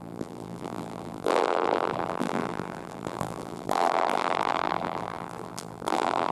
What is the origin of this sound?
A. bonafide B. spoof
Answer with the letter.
B